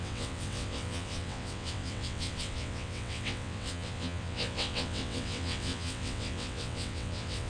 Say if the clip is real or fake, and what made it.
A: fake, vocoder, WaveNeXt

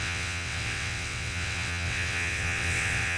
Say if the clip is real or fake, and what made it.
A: fake, vocoder, WaveNeXt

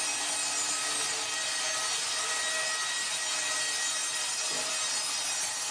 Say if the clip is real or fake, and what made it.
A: real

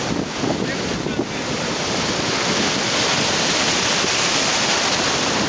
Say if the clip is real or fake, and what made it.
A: real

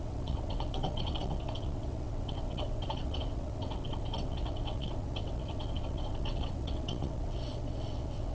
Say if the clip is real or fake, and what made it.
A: fake, vocoder, WaveNeXt